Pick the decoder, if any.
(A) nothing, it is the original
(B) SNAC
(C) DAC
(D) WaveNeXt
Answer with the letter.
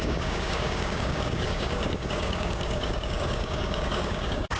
C